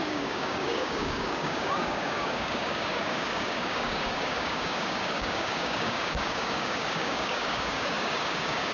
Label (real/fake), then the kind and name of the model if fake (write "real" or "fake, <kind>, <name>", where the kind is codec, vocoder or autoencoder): fake, codec, DAC